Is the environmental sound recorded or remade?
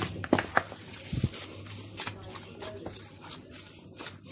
recorded